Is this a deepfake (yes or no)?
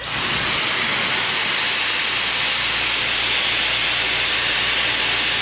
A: no